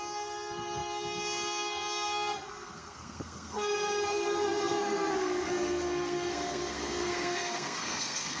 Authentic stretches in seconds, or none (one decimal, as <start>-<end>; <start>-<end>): none